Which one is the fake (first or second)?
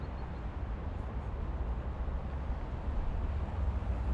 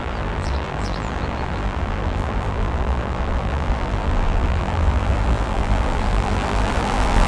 second